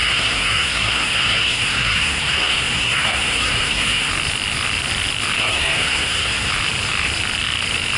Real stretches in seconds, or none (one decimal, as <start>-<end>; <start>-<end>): 4.1-5.4; 6.5-8.0